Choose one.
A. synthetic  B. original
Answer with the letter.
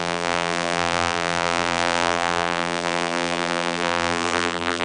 A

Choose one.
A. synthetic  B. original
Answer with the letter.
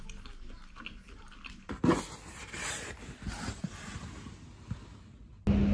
B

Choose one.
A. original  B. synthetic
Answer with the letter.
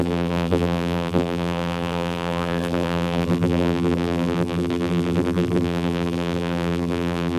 B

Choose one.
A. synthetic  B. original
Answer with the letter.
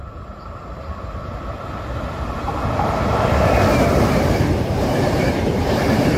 A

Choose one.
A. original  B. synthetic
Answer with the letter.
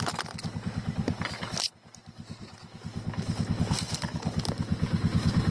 A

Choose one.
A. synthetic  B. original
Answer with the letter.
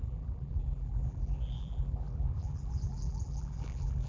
A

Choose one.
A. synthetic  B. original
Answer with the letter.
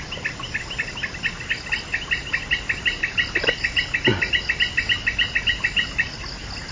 B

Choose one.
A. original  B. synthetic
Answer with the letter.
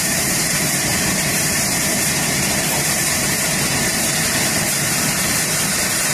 B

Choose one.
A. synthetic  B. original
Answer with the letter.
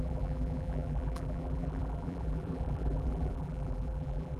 A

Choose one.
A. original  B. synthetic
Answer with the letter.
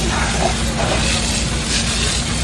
A